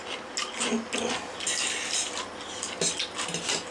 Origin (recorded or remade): recorded